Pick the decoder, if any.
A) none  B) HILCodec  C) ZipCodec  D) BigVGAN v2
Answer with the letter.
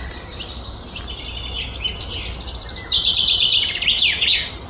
A